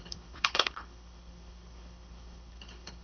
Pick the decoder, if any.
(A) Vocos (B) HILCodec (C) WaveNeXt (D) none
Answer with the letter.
B